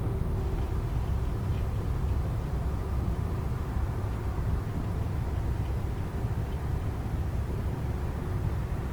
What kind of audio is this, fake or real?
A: real